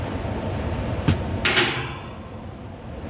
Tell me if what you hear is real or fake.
real